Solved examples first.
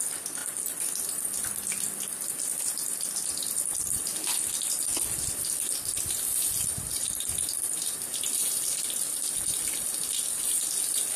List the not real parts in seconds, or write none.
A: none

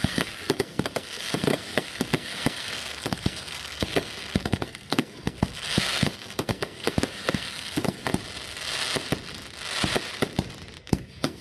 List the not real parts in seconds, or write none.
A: 0.0-8.1 (codec, SNAC); 10.8-11.4

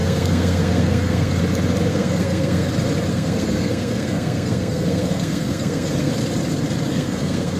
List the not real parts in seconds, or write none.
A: 0.0-1.4 (codec, SNAC); 1.9-2.7; 3.1-6.1; 6.9-7.6

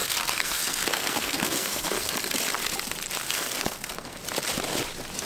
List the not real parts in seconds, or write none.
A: 0.0-2.1 (codec, SNAC); 3.2-4.2

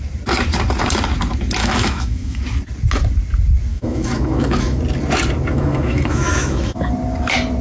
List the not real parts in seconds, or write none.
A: 1.6-2.4 (autoencoder, DAC-VAE); 3.7-4.8; 5.5-6.9

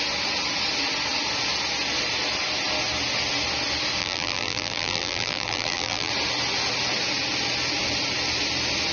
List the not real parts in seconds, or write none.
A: 4.0-6.1 (vocoder, BigVGAN v2)

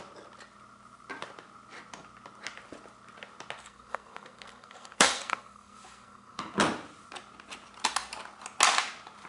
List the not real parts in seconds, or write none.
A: 3.6-6.4 (codec, SNAC)